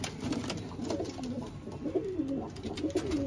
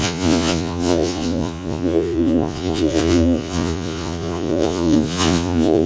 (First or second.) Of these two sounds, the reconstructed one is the second